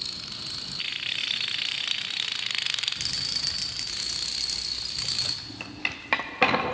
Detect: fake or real real